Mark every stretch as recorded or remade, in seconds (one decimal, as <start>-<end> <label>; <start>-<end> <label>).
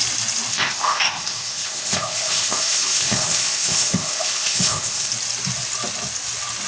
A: 0.0-0.5 recorded; 0.5-5.1 remade; 5.1-6.7 recorded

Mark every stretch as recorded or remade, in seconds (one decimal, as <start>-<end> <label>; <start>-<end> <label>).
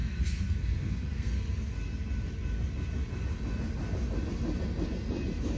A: 0.0-1.5 remade; 1.5-5.6 recorded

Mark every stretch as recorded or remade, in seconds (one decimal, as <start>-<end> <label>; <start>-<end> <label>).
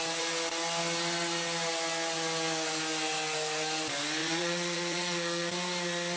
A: 0.0-4.2 recorded; 4.2-5.5 remade; 5.5-6.2 recorded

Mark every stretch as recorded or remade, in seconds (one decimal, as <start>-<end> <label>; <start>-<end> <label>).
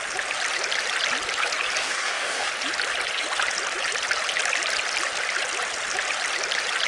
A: 0.0-1.8 recorded; 1.8-2.5 remade; 2.5-6.9 recorded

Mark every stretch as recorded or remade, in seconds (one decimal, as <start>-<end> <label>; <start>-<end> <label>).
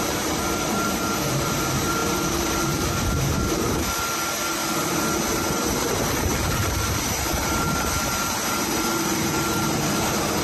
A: 0.0-10.4 remade